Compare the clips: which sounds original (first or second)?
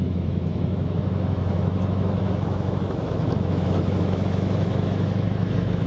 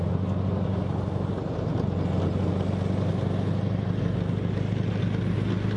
second